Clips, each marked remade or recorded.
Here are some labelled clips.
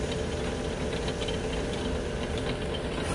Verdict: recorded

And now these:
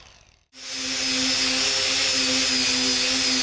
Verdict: recorded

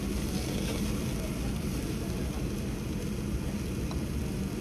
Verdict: recorded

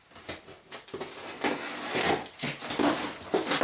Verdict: recorded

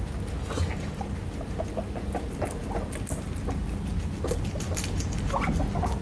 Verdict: recorded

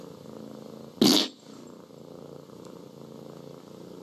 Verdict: recorded